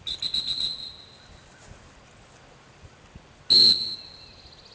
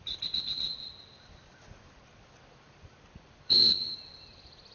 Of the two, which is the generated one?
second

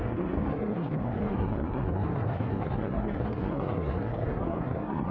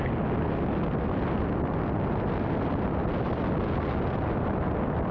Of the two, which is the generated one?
first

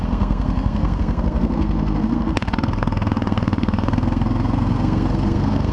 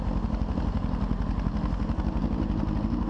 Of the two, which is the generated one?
first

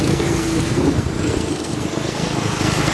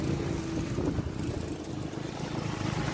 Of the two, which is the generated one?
first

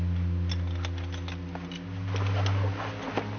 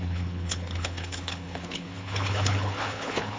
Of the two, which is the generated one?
second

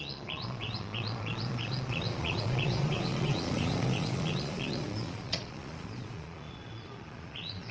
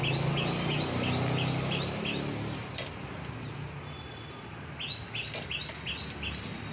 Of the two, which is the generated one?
first